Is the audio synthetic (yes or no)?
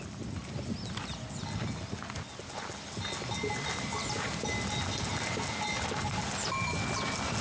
no